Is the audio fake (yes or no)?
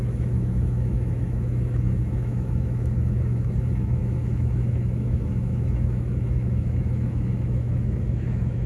yes